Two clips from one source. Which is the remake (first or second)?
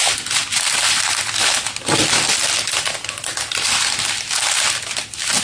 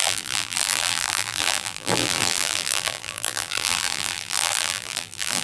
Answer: second